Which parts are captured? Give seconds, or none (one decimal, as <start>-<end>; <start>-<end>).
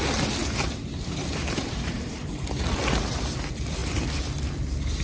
0.0-0.4; 2.6-5.0